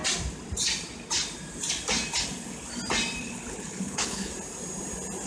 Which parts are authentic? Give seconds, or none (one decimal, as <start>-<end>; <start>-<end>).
0.0-3.2; 4.3-5.3